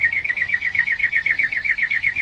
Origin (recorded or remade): remade